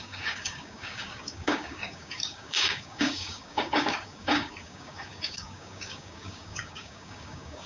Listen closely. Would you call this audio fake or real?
fake